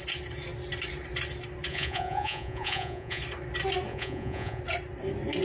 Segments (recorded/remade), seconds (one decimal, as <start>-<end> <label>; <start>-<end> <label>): 0.0-1.7 recorded; 1.7-3.2 remade; 3.2-3.9 recorded; 3.9-4.6 remade; 4.6-5.4 recorded